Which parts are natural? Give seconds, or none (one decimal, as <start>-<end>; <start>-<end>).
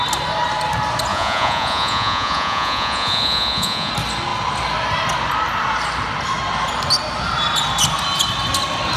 0.0-1.1; 3.9-9.0